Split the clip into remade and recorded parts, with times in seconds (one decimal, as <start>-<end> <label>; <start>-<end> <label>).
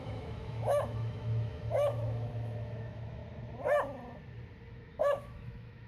0.0-3.2 remade; 3.2-4.7 recorded; 4.7-5.9 remade